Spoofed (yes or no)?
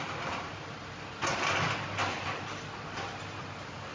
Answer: no